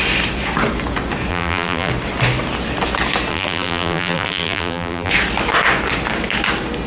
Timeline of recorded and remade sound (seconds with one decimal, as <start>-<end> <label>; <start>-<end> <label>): 0.0-1.3 recorded; 1.3-1.9 remade; 1.9-3.3 recorded; 3.3-5.1 remade; 5.1-6.9 recorded